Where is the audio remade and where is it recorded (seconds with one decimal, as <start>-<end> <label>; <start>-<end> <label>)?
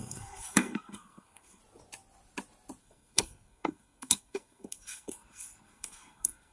0.0-1.6 remade; 1.6-2.8 recorded; 2.8-6.5 remade